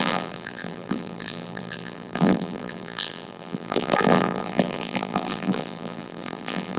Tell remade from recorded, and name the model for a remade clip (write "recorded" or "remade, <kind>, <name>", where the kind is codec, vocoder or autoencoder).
remade, vocoder, BigVGAN v2